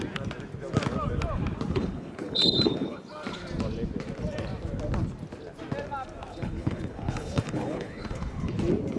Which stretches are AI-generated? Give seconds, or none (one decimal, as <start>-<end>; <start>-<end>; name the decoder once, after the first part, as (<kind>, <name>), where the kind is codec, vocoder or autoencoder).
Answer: 1.7-3.0 (codec, HILCodec); 6.3-8.6